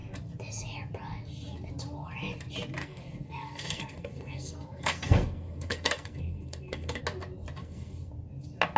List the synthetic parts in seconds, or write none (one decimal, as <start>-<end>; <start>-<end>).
2.8-7.0; 7.6-8.1